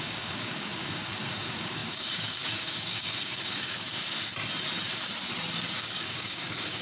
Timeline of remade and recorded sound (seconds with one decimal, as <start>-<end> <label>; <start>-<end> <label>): 0.0-4.3 remade; 4.3-5.8 recorded; 5.8-6.8 remade